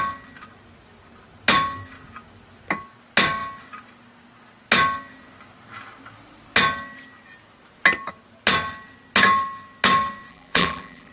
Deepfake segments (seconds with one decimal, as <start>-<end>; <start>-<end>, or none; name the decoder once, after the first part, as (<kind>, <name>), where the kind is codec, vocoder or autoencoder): 10.3-11.1 (vocoder, BigVGAN v2)